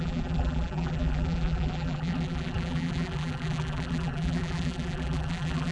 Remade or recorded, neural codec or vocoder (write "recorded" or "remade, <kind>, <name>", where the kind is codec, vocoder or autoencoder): remade, vocoder, BigVGAN v2